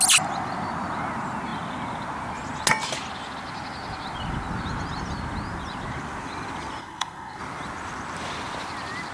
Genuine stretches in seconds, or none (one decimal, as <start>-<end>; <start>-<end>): 0.0-6.8; 7.4-9.1